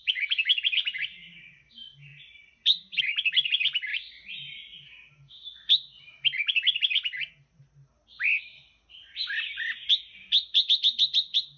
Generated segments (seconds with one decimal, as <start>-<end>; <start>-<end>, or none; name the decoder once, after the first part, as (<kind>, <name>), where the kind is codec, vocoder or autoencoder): 9.0-9.9 (vocoder, BigVGAN v2)

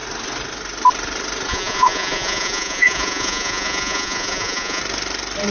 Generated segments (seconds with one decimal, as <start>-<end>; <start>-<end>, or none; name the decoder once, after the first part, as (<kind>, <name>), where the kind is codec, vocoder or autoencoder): 1.5-4.8 (vocoder, Vocos)

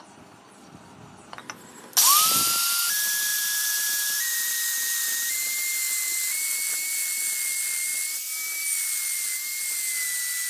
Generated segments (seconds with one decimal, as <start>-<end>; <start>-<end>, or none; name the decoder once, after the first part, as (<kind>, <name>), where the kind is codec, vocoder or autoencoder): 3.3-5.3 (vocoder, BigVGAN v2)